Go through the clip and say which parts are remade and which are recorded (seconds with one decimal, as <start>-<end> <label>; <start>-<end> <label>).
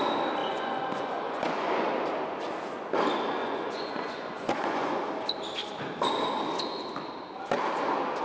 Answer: 0.0-0.4 recorded; 0.4-1.9 remade; 1.9-3.4 recorded; 3.4-5.1 remade; 5.1-8.2 recorded